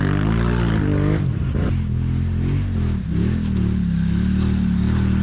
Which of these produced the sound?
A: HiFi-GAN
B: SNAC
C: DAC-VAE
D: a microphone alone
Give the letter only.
D